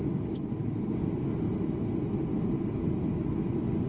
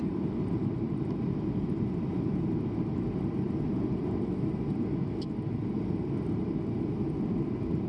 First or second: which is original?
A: first